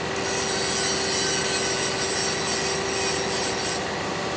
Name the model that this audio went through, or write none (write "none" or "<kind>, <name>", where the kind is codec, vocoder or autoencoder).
none